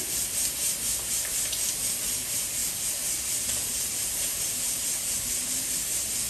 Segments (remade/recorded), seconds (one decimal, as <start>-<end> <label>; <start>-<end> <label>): 0.0-2.6 recorded; 2.6-5.6 remade; 5.6-6.3 recorded